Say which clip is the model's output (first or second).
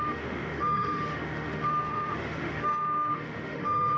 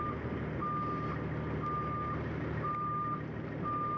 first